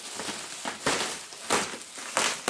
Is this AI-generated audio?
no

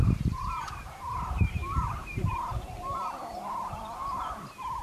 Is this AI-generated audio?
yes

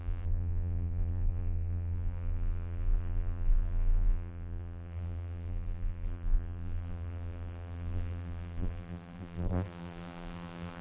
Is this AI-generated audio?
yes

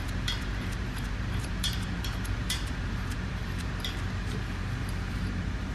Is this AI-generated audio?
yes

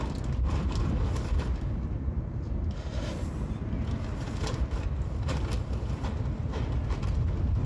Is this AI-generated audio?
no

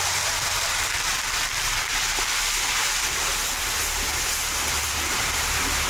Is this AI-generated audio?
no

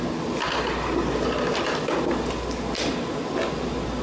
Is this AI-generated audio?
no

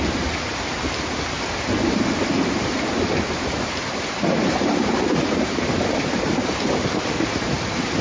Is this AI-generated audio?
yes